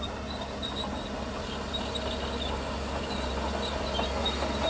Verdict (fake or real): real